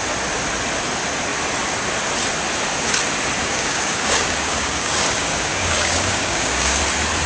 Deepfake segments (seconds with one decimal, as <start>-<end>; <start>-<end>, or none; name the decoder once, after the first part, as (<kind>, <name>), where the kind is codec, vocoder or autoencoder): 3.4-6.8 (codec, DAC)